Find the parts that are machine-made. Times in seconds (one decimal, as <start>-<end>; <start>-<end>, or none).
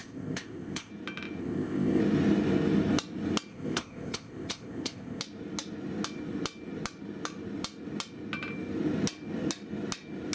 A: 0.0-0.9; 1.4-2.0; 3.5-5.2